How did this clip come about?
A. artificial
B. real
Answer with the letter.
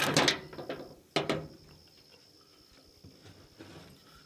B